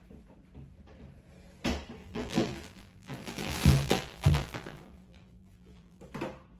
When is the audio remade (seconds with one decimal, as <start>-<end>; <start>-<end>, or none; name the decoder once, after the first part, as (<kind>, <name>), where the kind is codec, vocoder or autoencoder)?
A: 2.0-6.0 (vocoder, BigVGAN v2)